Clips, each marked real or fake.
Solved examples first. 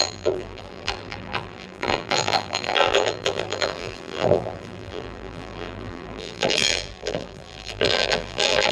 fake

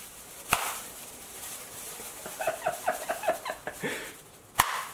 fake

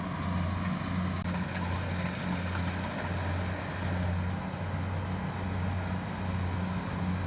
real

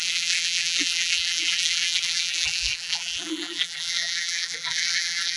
fake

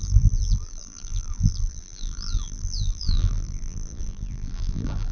fake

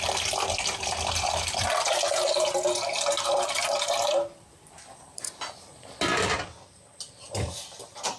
fake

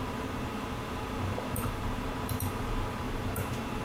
fake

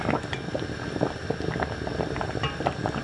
real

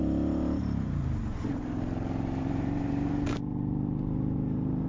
fake